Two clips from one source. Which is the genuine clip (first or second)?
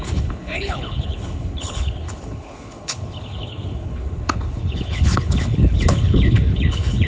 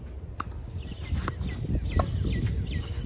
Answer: second